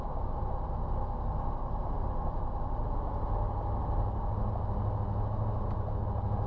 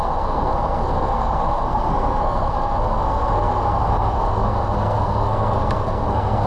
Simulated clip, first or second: second